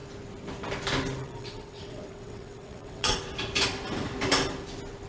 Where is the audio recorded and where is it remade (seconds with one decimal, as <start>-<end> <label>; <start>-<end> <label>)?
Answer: 0.0-1.2 recorded; 1.2-3.2 remade; 3.2-5.1 recorded